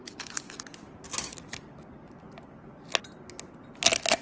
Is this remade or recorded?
recorded